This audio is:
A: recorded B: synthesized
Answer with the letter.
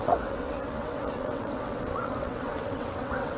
B